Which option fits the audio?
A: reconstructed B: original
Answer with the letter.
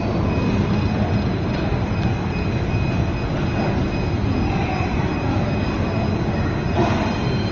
B